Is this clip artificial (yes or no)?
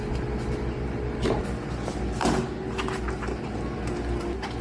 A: no